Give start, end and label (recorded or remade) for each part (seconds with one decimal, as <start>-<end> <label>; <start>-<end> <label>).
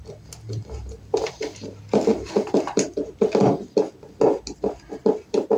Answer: 0.0-1.3 recorded; 1.3-2.1 remade; 2.1-5.0 recorded; 5.0-5.6 remade